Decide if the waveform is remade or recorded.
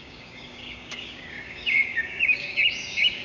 remade